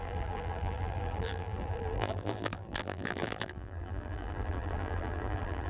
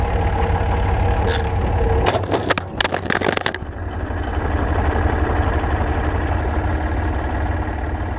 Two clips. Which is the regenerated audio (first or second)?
first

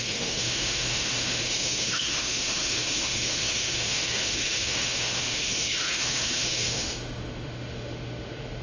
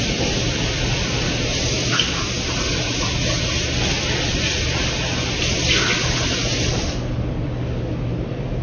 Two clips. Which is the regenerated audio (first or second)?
first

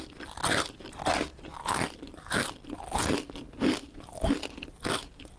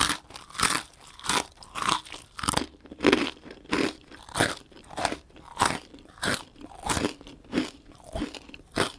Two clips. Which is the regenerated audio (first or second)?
second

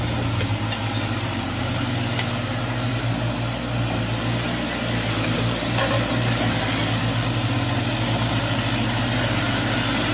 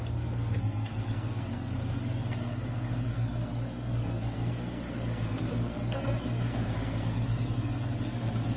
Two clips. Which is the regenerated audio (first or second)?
second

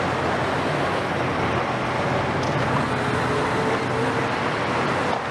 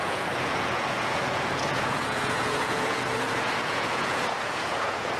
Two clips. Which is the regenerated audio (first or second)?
second